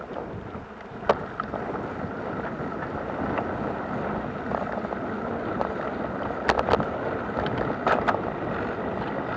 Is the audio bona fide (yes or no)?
yes